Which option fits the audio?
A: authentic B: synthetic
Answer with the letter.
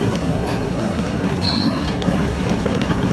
B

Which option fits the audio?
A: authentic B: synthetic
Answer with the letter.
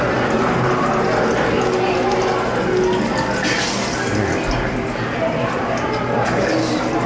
A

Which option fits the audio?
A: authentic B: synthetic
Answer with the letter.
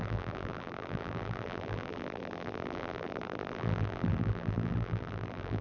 B